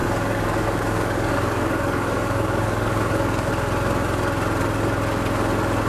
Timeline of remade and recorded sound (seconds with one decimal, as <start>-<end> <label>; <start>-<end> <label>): 0.0-3.5 remade; 3.5-5.9 recorded